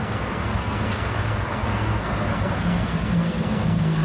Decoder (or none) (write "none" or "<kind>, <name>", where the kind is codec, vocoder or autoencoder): codec, SNAC